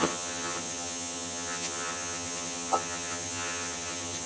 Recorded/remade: remade